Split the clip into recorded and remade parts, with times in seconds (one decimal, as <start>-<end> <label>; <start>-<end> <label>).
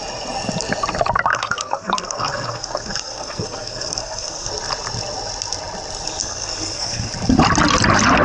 0.0-1.3 recorded; 1.3-4.5 remade; 4.5-6.2 recorded; 6.2-7.1 remade; 7.1-8.2 recorded